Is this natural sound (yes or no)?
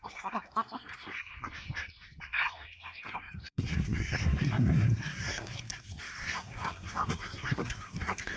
no